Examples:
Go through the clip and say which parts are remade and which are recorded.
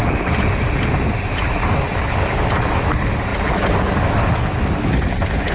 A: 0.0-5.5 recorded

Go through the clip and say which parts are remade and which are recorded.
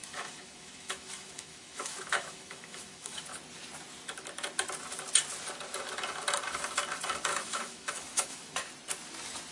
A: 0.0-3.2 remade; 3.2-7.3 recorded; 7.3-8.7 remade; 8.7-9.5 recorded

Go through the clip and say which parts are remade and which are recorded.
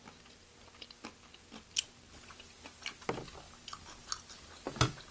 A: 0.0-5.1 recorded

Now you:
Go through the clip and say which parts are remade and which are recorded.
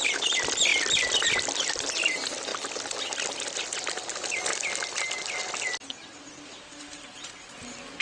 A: 0.0-0.7 recorded; 0.7-1.7 remade; 1.7-8.0 recorded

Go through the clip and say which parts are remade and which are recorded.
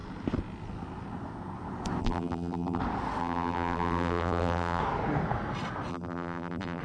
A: 0.0-2.0 recorded; 2.0-2.8 remade; 2.8-3.2 recorded; 3.2-4.8 remade; 4.8-5.9 recorded; 5.9-6.8 remade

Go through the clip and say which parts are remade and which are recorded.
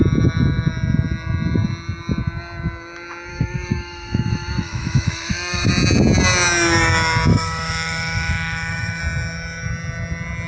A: 0.0-3.3 recorded; 3.3-5.7 remade; 5.7-7.3 recorded; 7.3-9.0 remade; 9.0-10.5 recorded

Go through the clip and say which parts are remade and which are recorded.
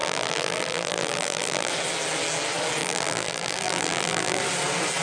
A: 0.0-1.7 remade; 1.7-2.8 recorded; 2.8-4.4 remade; 4.4-5.0 recorded